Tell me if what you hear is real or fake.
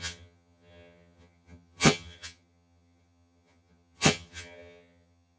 fake